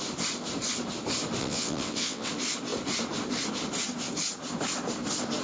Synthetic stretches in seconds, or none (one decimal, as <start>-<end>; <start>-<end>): 1.4-2.3